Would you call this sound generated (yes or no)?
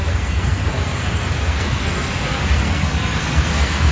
yes